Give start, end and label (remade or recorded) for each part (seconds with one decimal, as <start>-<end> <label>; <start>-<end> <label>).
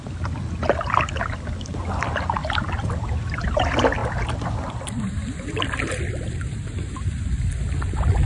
0.0-8.3 recorded